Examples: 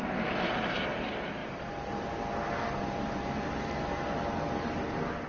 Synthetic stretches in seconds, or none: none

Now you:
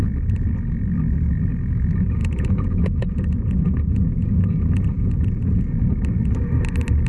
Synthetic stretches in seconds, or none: 2.2-5.6

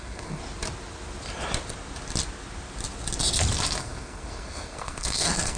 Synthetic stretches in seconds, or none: 0.0-0.4; 3.8-5.6

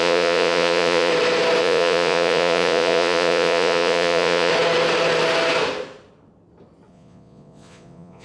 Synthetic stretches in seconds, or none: 0.0-1.1; 1.6-4.5; 6.9-8.2

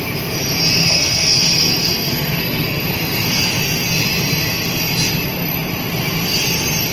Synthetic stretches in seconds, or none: 0.8-3.4

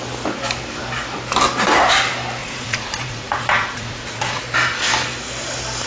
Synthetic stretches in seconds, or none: 2.4-4.4

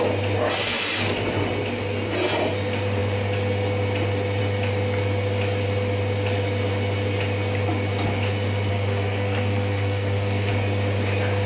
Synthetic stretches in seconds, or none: 8.7-10.5

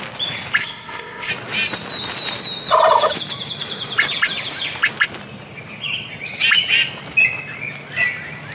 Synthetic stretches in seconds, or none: 0.6-1.3